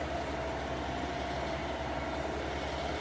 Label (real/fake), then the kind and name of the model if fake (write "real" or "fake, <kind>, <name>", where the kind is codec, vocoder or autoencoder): real